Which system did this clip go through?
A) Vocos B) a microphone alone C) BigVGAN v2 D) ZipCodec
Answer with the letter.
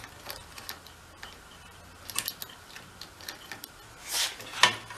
B